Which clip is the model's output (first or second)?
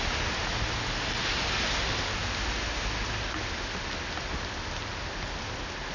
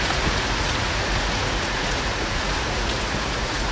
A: second